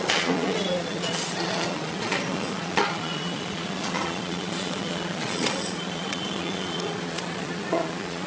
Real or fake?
fake